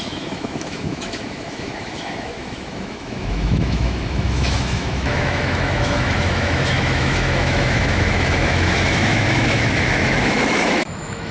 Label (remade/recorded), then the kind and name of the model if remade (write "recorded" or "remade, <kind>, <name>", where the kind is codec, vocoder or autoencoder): remade, autoencoder, DAC-VAE